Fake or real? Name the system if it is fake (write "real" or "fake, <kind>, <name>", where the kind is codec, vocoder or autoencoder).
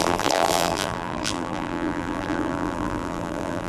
fake, vocoder, BigVGAN v2